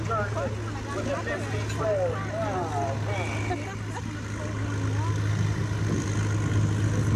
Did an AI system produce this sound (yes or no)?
no